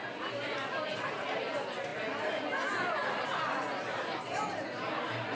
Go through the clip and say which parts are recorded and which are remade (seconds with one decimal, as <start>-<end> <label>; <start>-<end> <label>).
0.0-5.3 recorded